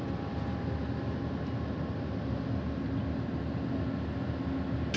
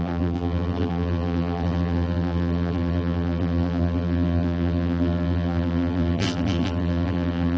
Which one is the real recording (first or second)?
first